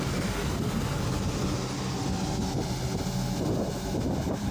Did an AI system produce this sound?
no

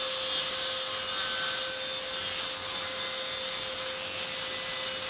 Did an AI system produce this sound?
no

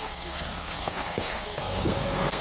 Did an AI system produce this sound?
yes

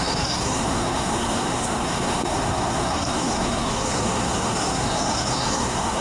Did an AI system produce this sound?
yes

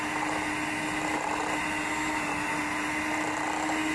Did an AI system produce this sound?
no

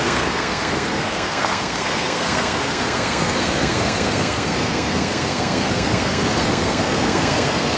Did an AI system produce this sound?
yes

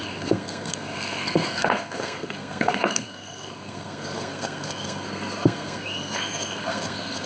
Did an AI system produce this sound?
yes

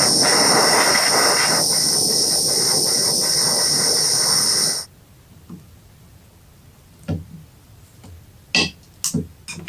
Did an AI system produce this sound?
no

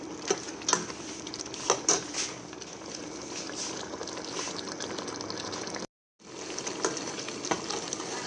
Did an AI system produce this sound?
no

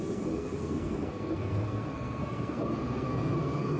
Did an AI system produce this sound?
yes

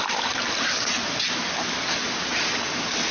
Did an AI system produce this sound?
no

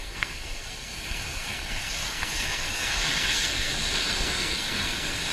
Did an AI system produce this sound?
yes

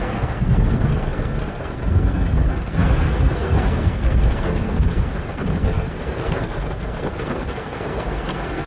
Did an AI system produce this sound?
yes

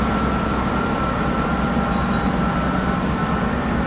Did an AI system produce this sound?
no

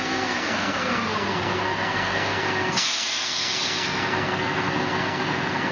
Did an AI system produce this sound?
yes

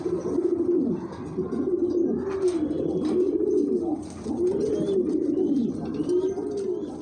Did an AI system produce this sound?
no